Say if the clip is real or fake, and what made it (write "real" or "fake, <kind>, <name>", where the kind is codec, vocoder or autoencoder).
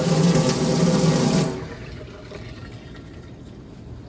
real